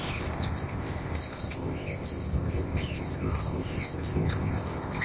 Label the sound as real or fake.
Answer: fake